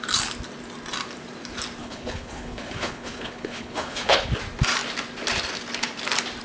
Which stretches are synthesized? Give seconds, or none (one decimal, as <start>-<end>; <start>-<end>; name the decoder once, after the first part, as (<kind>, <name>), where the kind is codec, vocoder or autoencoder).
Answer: 1.8-4.3 (codec, HILCodec)